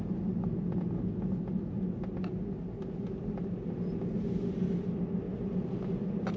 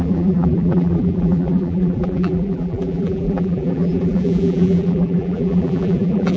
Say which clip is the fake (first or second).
second